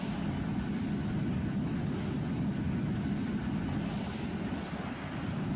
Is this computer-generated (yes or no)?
no